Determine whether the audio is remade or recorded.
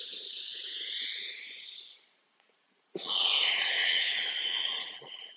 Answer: remade